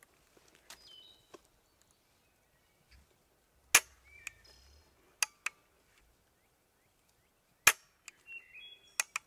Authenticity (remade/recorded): recorded